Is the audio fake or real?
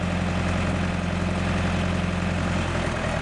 real